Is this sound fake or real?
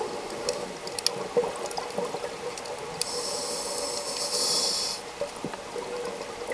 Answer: real